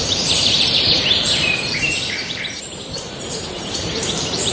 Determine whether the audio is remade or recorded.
remade